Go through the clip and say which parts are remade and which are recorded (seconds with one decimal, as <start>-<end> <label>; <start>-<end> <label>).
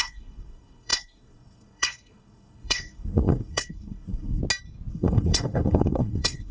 0.0-4.4 remade; 4.4-4.9 recorded; 4.9-6.5 remade